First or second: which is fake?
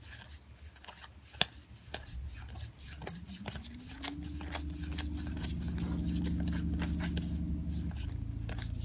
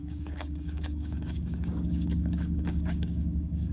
second